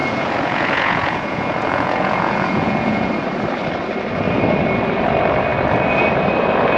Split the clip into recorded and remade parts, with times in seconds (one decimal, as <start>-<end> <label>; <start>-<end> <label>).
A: 0.0-3.1 remade; 3.1-6.8 recorded

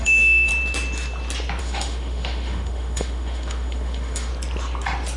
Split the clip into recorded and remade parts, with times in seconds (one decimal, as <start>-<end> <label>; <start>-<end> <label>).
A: 0.0-0.5 remade; 0.5-1.6 recorded; 1.6-4.3 remade; 4.3-5.2 recorded

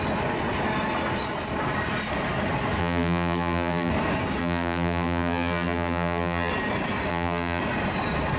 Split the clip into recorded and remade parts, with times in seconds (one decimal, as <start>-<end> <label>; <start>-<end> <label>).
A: 0.0-2.8 recorded; 2.8-3.9 remade; 3.9-4.4 recorded; 4.4-6.5 remade; 6.5-7.1 recorded; 7.1-7.6 remade; 7.6-8.4 recorded

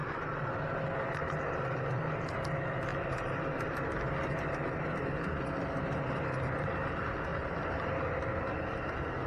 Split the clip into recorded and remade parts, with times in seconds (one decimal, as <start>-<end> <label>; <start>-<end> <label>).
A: 0.0-0.5 remade; 0.5-2.9 recorded; 2.9-3.4 remade; 3.4-7.3 recorded; 7.3-7.9 remade; 7.9-9.3 recorded